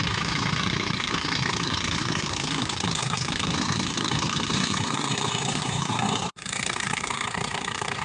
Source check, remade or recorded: remade